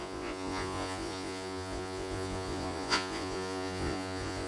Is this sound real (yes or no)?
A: no